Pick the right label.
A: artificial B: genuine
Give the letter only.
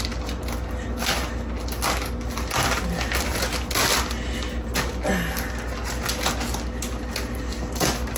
B